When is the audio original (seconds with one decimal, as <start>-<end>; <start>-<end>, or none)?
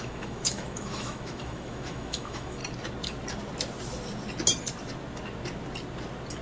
2.6-6.4